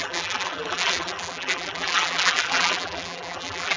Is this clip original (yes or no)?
no